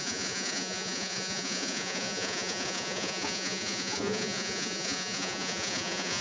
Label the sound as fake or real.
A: fake